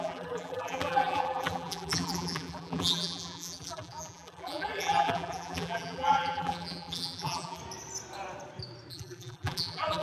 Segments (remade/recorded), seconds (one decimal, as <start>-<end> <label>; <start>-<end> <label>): 0.0-7.6 remade; 7.6-8.9 recorded; 8.9-10.0 remade